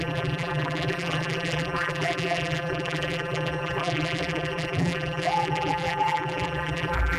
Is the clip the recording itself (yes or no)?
no